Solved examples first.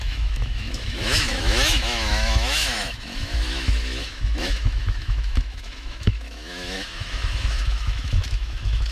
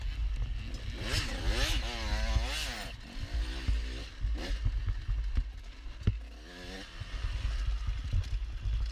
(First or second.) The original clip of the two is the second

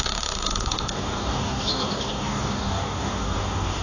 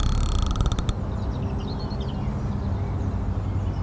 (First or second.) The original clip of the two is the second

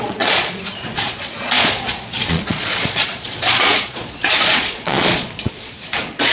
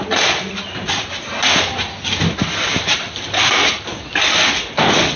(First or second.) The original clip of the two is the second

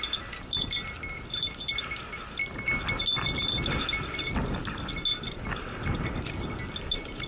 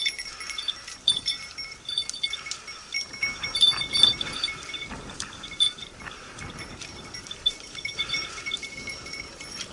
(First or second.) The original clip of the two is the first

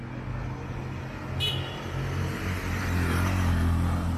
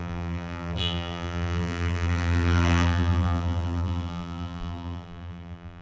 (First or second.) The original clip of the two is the first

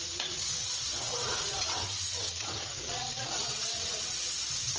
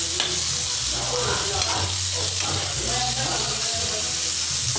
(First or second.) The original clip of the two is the second